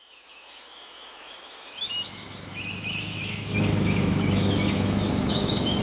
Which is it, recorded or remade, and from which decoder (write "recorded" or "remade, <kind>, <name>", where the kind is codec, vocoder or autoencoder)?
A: remade, autoencoder, DAC-VAE